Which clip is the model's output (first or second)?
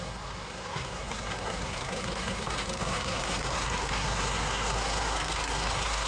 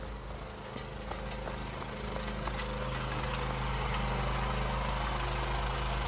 first